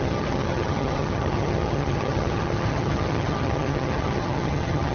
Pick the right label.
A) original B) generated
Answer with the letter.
B